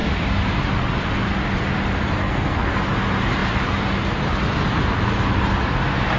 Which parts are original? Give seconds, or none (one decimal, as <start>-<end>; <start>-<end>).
0.0-2.2; 2.7-6.2